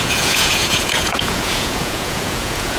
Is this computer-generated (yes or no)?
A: yes